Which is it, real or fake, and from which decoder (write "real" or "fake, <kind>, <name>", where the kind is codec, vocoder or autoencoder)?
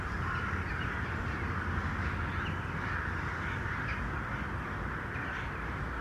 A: real